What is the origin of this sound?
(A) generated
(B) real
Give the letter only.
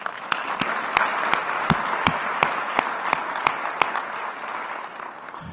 B